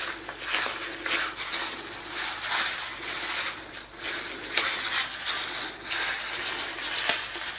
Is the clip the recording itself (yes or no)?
yes